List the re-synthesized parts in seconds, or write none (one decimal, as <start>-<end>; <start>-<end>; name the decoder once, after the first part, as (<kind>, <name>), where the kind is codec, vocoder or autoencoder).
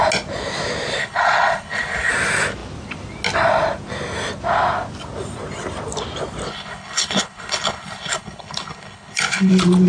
1.0-2.1 (codec, HILCodec); 6.5-9.5